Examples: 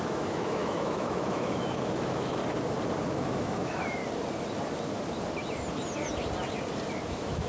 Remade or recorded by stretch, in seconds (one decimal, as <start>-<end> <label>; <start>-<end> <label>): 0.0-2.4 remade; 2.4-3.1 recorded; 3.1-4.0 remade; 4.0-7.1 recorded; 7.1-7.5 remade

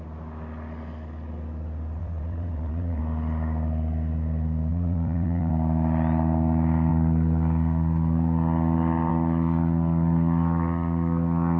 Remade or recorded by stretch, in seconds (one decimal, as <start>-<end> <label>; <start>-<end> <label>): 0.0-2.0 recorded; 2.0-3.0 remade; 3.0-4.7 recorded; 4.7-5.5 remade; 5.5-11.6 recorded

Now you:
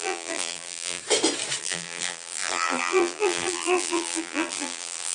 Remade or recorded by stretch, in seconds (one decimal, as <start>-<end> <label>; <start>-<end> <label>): 0.0-1.0 remade; 1.0-1.6 recorded; 1.6-5.1 remade

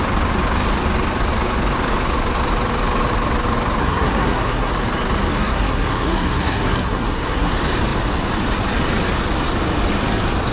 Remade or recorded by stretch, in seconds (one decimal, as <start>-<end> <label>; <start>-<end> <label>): 0.0-3.8 recorded; 3.8-4.7 remade; 4.7-5.3 recorded; 5.3-7.5 remade; 7.5-10.5 recorded

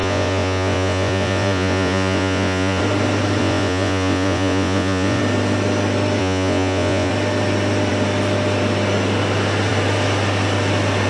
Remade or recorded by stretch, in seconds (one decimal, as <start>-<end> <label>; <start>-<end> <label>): 0.0-2.8 remade; 2.8-3.4 recorded; 3.4-5.2 remade; 5.2-6.2 recorded; 6.2-7.1 remade; 7.1-11.1 recorded

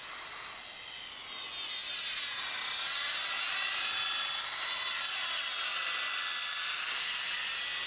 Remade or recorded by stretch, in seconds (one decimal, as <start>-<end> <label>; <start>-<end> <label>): 0.0-7.9 recorded

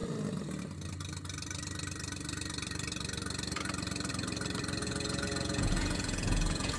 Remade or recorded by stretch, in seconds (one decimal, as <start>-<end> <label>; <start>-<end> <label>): 0.0-4.8 recorded; 4.8-6.8 remade